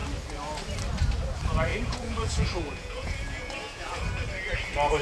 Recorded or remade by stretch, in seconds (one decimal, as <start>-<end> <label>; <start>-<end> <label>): 0.0-1.7 recorded; 1.7-4.0 remade; 4.0-5.0 recorded